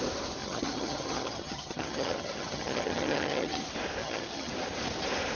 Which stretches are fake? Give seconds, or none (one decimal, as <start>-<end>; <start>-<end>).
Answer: 0.4-3.6; 4.0-4.5